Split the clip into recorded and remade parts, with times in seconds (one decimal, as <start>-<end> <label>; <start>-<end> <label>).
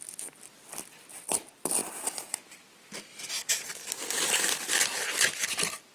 0.0-3.7 recorded; 3.7-5.9 remade